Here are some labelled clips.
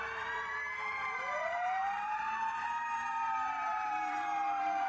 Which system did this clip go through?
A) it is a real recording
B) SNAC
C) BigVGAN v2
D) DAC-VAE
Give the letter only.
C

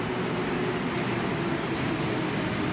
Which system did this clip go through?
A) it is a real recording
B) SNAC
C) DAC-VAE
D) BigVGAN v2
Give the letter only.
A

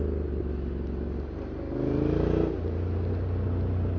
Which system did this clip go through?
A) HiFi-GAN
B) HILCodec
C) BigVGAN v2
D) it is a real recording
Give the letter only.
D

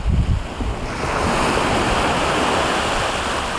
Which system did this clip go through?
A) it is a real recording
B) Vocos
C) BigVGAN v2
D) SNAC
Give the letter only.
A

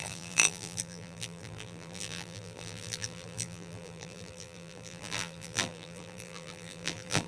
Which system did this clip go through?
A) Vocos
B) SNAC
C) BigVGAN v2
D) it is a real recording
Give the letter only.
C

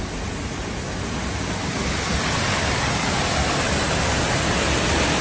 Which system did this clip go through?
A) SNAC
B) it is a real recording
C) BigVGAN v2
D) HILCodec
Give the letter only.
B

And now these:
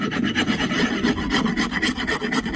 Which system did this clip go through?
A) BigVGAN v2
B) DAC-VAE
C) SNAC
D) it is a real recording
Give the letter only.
D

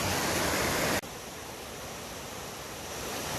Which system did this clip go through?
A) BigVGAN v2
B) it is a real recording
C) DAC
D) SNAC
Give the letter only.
B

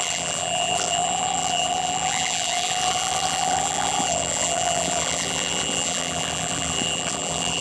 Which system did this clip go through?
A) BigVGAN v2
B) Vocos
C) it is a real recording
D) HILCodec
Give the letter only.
A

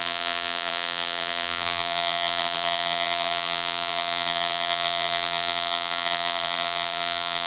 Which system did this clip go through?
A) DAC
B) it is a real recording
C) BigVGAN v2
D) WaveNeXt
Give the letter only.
C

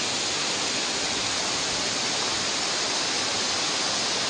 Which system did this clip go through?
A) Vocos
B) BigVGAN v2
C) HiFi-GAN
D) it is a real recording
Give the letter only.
D